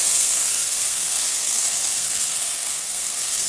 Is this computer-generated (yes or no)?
yes